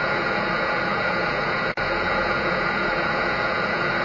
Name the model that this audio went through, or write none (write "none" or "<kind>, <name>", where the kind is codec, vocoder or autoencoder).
vocoder, Vocos